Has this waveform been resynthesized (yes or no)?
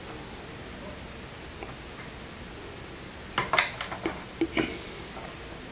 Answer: no